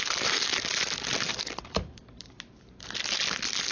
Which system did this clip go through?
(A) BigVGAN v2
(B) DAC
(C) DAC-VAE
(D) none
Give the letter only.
D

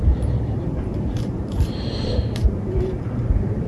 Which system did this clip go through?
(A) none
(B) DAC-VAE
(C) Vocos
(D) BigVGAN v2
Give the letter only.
D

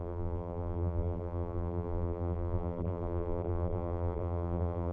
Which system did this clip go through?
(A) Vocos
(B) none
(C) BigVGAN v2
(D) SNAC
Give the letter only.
C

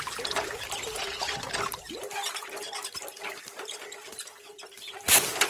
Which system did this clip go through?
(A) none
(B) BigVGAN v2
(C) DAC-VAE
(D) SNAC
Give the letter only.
B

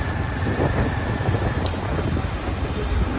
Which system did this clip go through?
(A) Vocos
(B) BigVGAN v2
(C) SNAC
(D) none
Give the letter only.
D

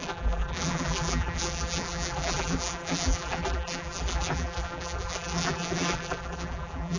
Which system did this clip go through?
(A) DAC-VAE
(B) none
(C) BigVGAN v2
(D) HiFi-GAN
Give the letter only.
C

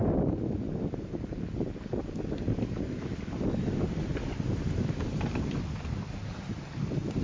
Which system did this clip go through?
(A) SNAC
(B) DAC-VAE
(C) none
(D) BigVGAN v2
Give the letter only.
C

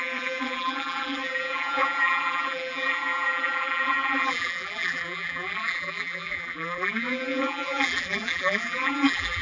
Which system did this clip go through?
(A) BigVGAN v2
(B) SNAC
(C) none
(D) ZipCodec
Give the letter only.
A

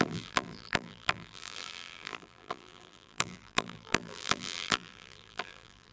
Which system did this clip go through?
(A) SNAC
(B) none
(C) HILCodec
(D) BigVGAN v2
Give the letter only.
D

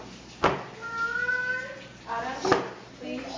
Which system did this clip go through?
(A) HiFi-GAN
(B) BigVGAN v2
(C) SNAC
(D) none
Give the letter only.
D